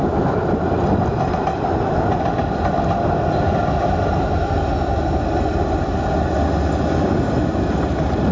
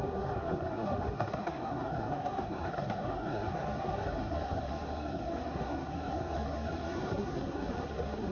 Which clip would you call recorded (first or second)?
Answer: first